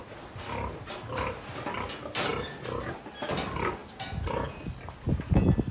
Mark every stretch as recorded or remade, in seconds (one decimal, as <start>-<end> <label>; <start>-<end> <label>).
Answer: 0.0-5.7 recorded